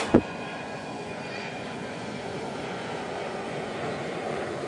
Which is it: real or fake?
fake